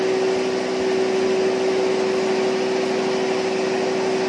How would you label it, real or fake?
real